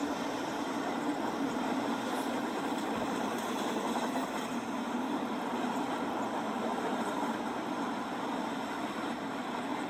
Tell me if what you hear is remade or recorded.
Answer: recorded